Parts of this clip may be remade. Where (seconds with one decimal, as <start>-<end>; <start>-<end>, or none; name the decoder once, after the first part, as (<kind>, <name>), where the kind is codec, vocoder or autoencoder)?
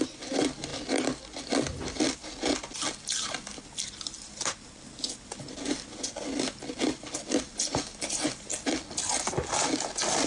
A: none